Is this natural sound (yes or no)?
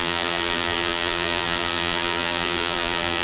no